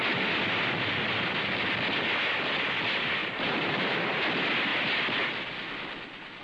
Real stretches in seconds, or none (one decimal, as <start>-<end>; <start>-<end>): 0.0-3.2; 4.0-6.4